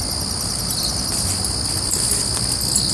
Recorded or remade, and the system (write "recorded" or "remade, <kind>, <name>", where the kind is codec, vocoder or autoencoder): recorded